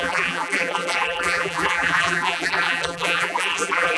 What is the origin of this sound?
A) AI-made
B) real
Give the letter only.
A